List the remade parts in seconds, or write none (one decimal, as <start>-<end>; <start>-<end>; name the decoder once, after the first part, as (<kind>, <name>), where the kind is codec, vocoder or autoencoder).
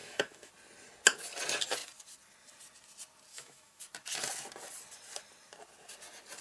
0.0-0.5 (autoencoder, DAC-VAE); 3.3-3.8